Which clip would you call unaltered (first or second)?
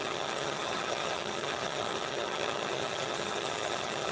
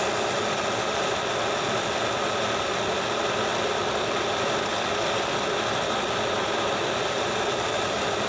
second